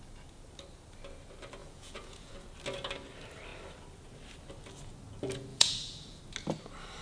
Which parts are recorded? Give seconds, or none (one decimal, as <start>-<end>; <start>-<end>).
0.0-1.6; 2.3-5.5; 6.2-7.0

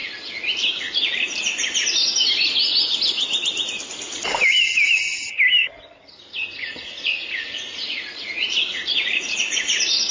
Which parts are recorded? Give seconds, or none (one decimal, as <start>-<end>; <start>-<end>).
0.0-6.6

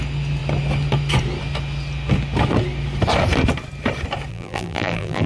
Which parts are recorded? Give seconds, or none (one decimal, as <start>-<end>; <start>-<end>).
0.0-4.3

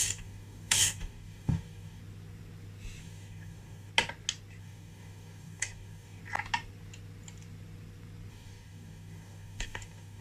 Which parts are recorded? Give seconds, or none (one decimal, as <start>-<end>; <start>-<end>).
2.0-3.0; 3.9-4.6; 6.2-8.3

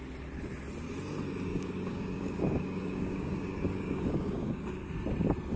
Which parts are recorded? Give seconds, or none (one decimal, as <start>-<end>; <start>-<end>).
0.0-1.5; 4.9-5.6